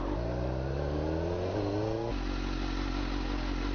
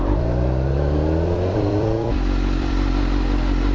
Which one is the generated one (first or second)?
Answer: second